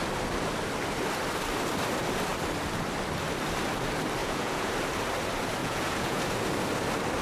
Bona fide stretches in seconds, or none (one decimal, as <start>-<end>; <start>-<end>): 0.0-4.2; 4.7-5.6; 6.2-7.2